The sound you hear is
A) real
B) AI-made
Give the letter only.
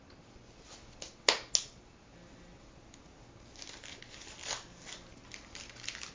A